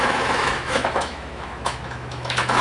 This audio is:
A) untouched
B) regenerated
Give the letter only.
B